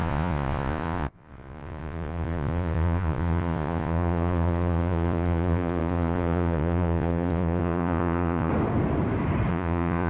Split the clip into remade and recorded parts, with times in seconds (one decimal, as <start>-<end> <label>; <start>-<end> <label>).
0.0-8.5 remade; 8.5-9.5 recorded; 9.5-10.1 remade